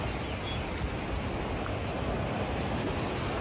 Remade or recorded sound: recorded